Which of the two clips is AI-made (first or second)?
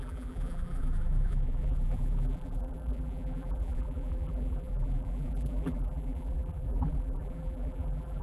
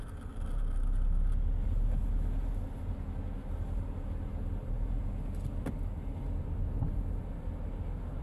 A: first